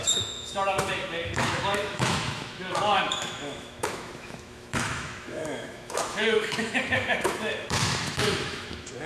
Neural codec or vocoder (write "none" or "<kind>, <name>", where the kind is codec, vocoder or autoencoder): autoencoder, DAC-VAE